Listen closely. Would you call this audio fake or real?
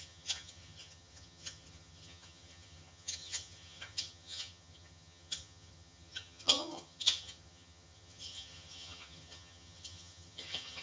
fake